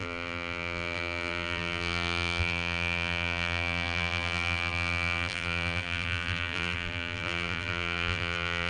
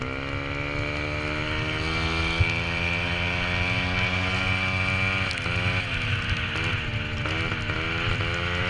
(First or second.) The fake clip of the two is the first